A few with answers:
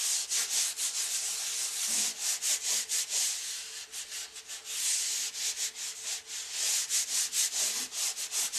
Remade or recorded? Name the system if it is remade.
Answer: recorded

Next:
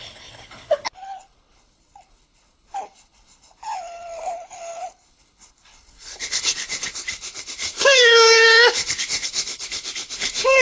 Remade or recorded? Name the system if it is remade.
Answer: remade, codec, HILCodec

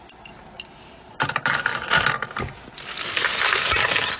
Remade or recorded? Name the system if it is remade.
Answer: recorded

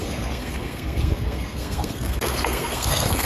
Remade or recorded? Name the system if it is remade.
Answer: remade, codec, SNAC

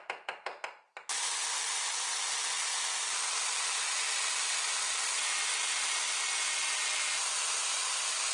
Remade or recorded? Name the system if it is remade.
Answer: recorded